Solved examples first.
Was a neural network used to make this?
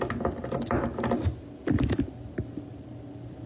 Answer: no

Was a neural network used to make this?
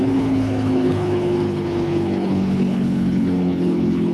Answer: yes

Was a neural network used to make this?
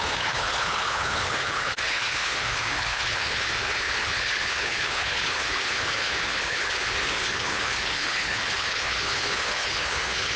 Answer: yes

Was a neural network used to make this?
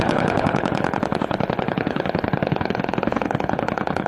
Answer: yes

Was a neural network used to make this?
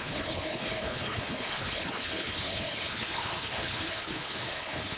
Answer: yes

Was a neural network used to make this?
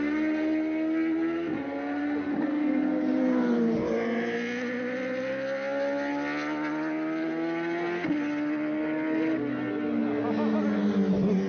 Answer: no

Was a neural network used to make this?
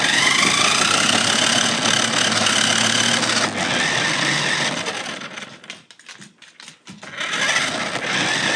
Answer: no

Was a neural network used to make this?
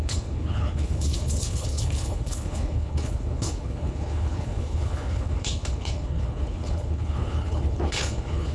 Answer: yes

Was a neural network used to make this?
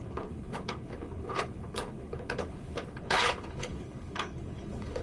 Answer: yes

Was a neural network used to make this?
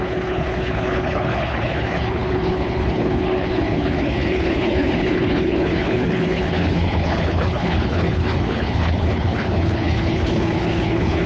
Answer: yes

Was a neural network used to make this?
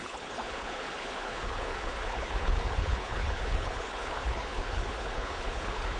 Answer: yes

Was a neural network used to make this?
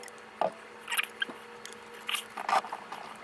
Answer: no